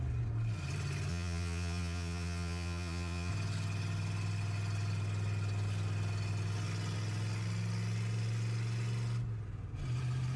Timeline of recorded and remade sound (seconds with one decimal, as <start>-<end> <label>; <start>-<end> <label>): 0.0-1.1 recorded; 1.1-3.3 remade; 3.3-10.4 recorded